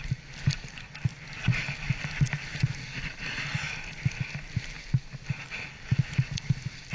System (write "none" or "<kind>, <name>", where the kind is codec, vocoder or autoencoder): none